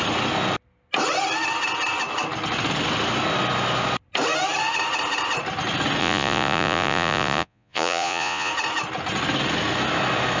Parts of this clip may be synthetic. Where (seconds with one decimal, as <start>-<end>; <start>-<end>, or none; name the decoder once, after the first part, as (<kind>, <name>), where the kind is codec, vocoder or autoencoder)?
6.0-8.5 (vocoder, Vocos)